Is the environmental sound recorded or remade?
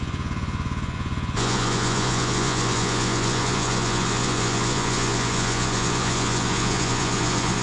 remade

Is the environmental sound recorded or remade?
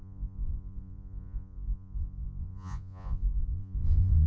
remade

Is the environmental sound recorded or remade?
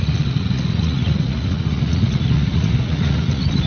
remade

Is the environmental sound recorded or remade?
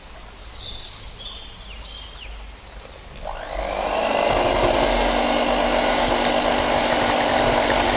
recorded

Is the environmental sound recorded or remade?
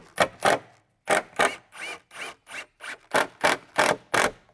recorded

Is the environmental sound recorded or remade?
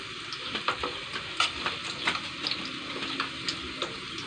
recorded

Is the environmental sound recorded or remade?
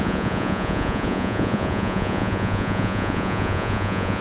remade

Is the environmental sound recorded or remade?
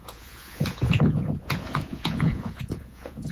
remade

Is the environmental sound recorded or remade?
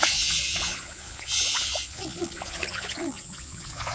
remade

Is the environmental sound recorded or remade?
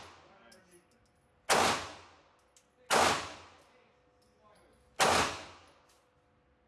recorded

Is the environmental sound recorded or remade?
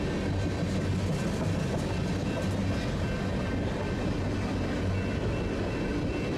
recorded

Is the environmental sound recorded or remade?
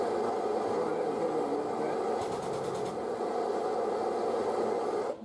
recorded